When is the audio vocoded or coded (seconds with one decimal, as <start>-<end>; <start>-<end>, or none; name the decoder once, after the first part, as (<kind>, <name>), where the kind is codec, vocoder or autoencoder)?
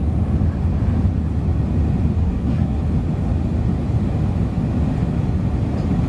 2.2-2.8 (codec, SNAC)